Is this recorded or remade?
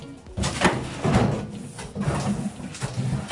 recorded